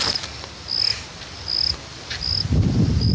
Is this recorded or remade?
recorded